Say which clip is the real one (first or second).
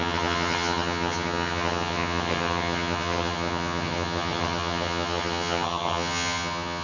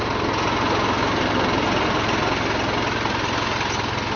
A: second